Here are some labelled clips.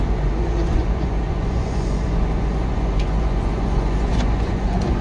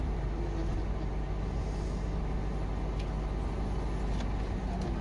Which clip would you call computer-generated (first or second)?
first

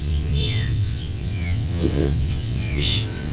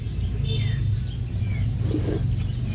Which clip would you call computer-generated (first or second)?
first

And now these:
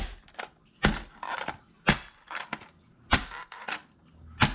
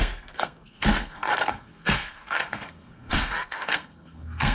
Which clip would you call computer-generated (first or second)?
second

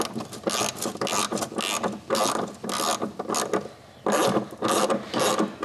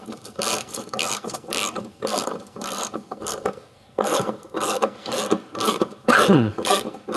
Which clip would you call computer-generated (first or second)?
second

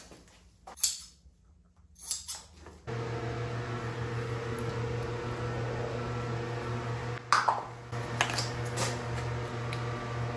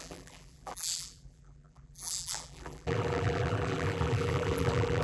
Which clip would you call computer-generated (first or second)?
second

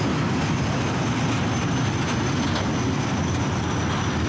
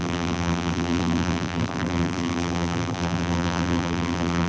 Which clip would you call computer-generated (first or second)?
second